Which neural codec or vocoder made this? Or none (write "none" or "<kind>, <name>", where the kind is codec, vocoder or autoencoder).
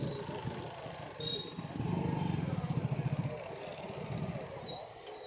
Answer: none